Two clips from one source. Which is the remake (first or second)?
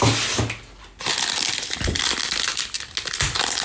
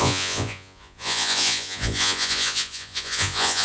second